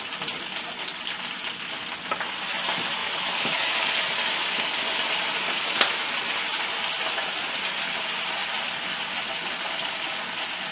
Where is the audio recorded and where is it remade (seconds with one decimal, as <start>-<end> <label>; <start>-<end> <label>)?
0.0-3.0 recorded; 3.0-3.8 remade; 3.8-10.7 recorded